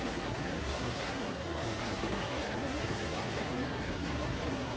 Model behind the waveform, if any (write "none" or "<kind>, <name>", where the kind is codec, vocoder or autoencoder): codec, SNAC